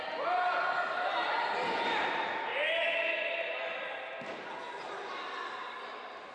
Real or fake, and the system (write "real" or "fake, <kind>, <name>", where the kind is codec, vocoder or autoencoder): real